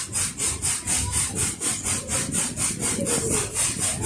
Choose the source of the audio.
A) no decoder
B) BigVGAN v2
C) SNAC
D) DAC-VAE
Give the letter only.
A